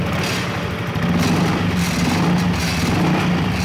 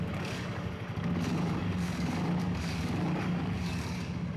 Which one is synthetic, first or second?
second